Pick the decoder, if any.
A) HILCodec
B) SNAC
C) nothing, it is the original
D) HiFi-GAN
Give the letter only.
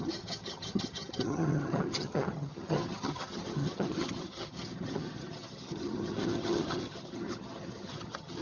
D